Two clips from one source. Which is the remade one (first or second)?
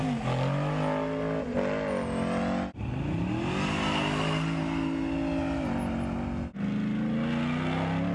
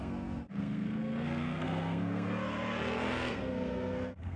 second